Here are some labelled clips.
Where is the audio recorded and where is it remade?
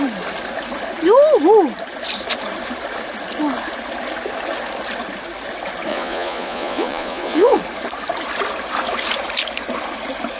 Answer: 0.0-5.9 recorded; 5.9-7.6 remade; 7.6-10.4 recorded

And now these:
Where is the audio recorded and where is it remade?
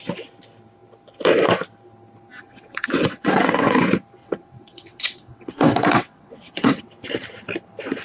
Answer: 0.0-2.3 recorded; 2.3-3.8 remade; 3.8-4.2 recorded; 4.2-6.8 remade; 6.8-8.0 recorded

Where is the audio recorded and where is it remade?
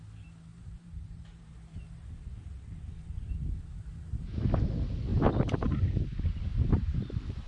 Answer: 0.0-0.5 recorded; 0.5-1.5 remade; 1.5-5.1 recorded; 5.1-6.0 remade; 6.0-6.5 recorded; 6.5-7.5 remade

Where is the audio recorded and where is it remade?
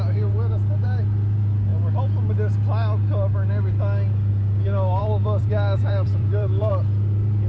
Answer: 0.0-5.0 recorded; 5.0-6.7 remade; 6.7-7.5 recorded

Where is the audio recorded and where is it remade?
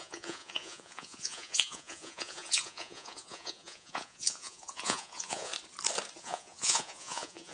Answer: 0.0-5.5 remade; 5.5-6.2 recorded; 6.2-7.5 remade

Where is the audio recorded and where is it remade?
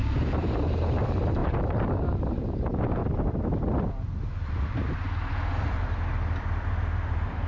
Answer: 0.0-3.0 remade; 3.0-7.1 recorded; 7.1-7.5 remade